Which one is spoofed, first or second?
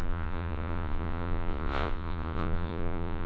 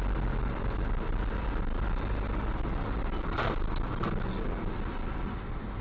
first